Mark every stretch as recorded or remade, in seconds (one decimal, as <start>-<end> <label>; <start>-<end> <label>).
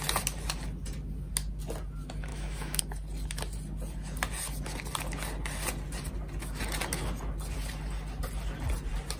0.0-2.3 recorded; 2.3-2.8 remade; 2.8-9.2 recorded